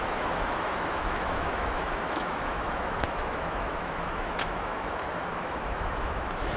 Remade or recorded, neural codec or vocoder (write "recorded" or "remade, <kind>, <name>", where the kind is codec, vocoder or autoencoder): remade, autoencoder, DAC-VAE